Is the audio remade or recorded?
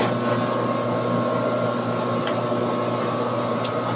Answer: recorded